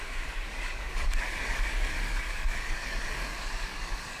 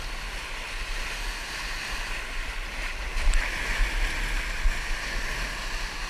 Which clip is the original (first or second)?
second